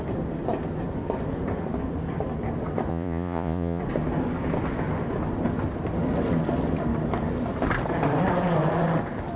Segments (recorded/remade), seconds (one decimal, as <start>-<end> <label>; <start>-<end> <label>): 0.0-2.9 recorded; 2.9-3.8 remade; 3.8-9.4 recorded